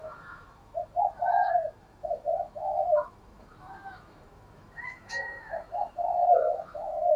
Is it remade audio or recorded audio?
remade